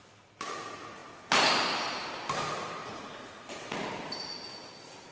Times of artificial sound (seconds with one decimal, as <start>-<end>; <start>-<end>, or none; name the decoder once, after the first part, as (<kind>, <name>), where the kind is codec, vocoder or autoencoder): 2.8-3.4 (vocoder, Vocos)